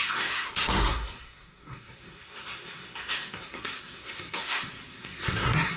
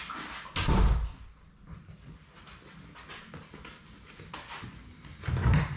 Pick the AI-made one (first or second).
first